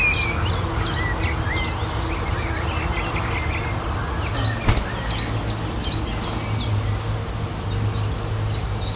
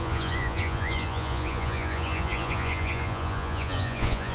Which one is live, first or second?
first